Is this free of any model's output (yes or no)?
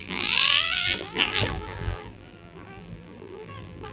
no